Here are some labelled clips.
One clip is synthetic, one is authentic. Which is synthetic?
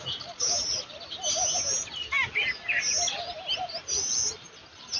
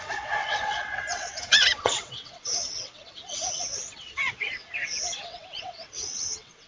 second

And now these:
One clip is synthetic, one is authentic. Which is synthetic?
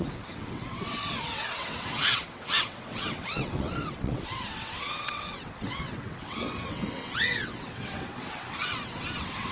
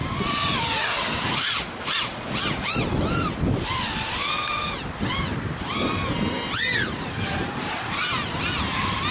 first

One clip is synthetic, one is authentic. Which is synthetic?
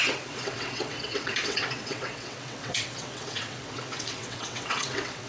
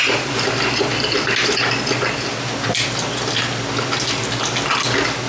first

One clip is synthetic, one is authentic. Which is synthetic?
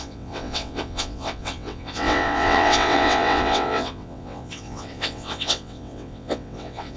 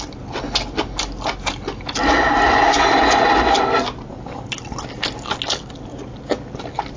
first